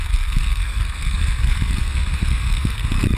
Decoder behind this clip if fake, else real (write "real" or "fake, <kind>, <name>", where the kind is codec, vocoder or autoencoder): fake, codec, SNAC